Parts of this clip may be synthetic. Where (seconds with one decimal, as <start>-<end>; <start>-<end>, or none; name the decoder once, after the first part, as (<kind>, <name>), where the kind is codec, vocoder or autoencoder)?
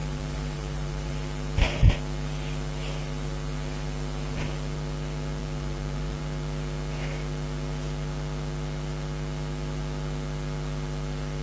0.0-1.1 (vocoder, BigVGAN v2); 5.4-6.2